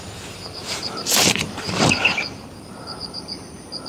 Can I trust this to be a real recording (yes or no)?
no